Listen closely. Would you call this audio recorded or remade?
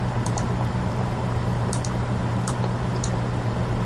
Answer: remade